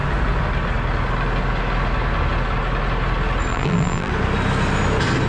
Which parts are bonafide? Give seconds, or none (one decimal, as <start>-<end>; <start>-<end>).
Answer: 0.0-3.5; 4.1-5.3